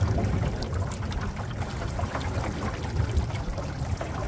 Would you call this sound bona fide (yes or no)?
yes